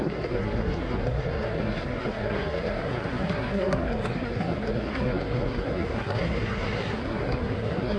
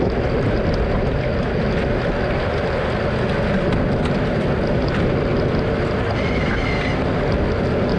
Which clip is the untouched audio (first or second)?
second